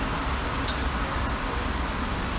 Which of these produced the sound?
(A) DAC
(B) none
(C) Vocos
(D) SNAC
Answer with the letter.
B